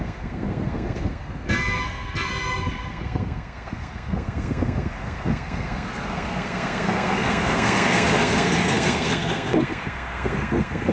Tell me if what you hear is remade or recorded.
remade